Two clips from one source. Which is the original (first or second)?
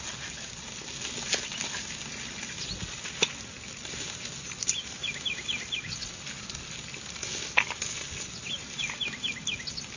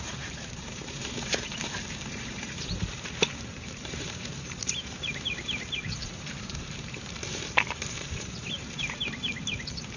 first